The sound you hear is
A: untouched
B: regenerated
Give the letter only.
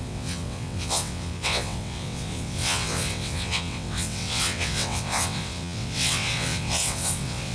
B